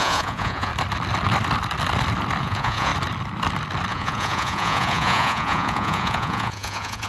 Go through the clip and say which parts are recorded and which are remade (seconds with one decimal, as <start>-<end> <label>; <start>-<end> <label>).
0.0-0.7 remade; 0.7-2.4 recorded; 2.4-2.9 remade; 2.9-3.9 recorded; 3.9-7.1 remade